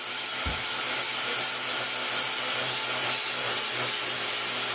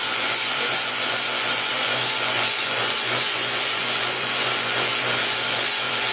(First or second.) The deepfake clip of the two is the second